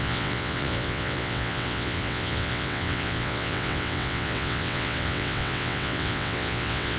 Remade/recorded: remade